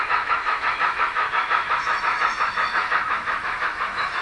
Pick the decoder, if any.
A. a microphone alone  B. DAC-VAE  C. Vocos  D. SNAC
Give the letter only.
B